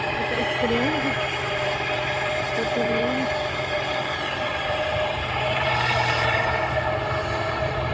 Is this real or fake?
fake